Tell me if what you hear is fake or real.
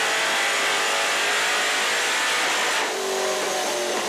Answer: real